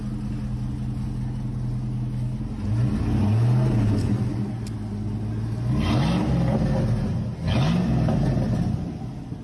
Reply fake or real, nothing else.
real